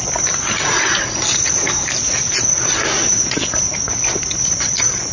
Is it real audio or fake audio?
real